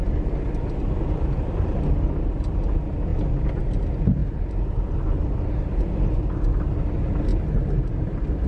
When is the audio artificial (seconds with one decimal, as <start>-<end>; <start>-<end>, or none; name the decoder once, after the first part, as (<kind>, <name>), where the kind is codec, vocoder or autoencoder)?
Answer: 4.2-5.5 (vocoder, BigVGAN v2)